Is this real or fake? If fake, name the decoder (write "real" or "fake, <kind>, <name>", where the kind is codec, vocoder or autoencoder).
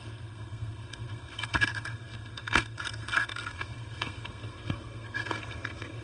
fake, codec, SNAC